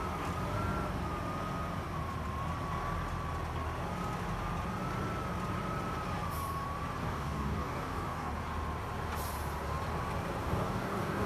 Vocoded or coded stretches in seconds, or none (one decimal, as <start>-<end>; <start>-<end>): 7.0-8.3; 10.4-11.3